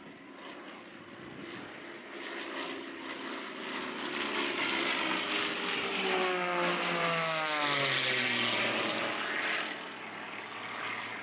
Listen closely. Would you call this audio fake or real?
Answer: real